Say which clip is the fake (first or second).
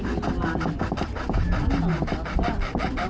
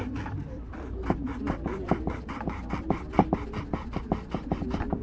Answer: second